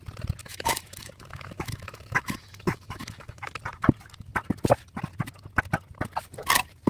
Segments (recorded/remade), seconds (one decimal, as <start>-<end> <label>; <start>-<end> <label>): 0.0-0.4 recorded; 0.4-3.6 remade; 3.6-6.9 recorded